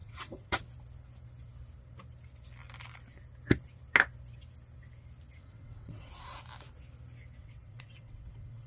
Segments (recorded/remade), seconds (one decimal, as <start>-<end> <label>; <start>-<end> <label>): 0.0-0.6 remade; 0.6-5.4 recorded; 5.4-6.1 remade; 6.1-7.4 recorded; 7.4-8.7 remade